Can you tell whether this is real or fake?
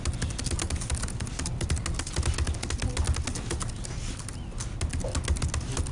real